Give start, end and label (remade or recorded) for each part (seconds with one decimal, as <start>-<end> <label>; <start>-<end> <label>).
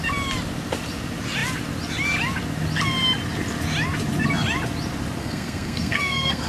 0.0-5.2 recorded; 5.2-6.5 remade